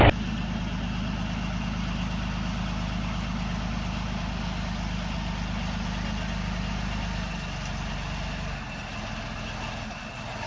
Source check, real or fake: real